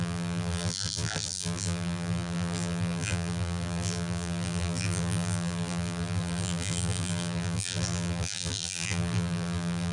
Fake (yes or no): yes